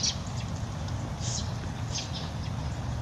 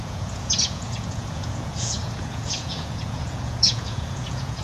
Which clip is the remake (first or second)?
second